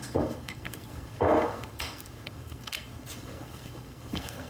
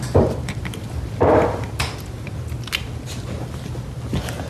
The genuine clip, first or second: second